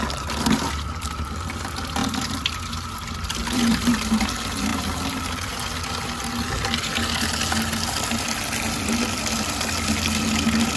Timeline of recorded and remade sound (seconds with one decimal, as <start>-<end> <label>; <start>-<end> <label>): 0.0-3.3 recorded; 3.3-4.2 remade; 4.2-4.7 recorded; 4.7-5.5 remade; 5.5-10.8 recorded